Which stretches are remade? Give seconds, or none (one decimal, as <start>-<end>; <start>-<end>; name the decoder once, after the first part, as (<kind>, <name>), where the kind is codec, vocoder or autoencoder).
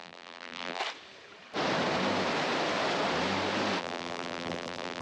0.0-0.8 (vocoder, BigVGAN v2); 3.8-5.0